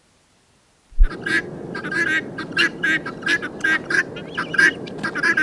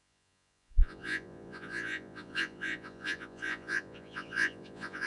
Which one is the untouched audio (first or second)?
first